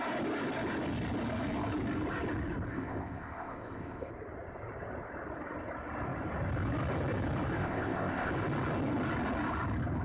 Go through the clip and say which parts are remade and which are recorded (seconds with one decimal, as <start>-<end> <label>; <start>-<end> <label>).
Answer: 0.0-2.7 recorded; 2.7-4.1 remade; 4.1-7.6 recorded; 7.6-8.3 remade; 8.3-10.0 recorded